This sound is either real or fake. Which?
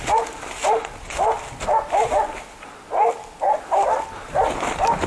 real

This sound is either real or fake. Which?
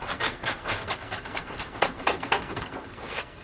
fake